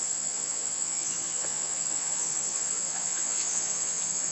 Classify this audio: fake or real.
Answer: fake